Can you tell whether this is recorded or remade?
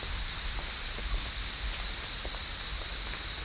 recorded